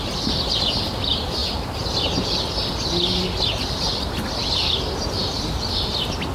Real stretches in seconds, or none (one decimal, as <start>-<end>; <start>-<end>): 0.0-6.3